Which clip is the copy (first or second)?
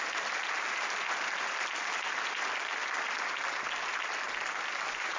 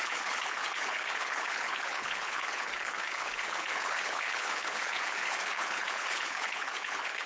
second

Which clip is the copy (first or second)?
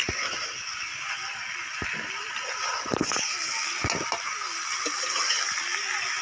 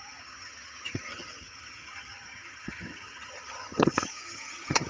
second